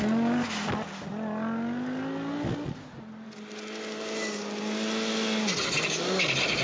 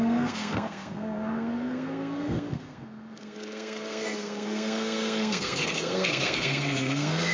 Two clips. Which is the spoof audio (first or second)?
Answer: second